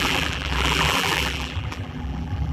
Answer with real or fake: fake